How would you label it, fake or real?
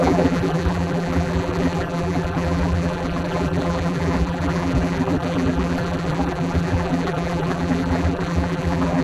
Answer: fake